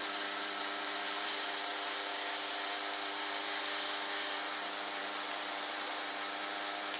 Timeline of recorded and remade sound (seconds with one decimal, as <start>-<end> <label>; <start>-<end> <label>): 0.0-7.0 remade